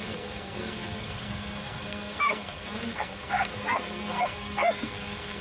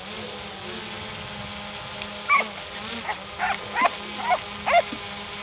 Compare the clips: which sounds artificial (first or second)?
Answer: first